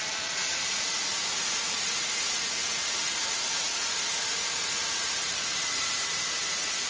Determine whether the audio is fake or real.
fake